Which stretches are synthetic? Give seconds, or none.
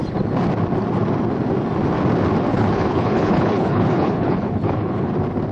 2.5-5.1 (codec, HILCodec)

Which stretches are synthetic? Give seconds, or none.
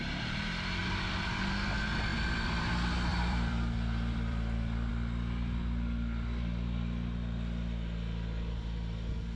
0.8-1.3 (vocoder, BigVGAN v2); 2.1-2.7; 3.1-4.9